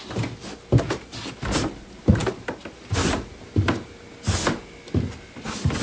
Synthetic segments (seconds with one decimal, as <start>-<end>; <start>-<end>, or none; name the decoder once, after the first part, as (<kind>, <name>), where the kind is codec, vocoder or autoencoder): none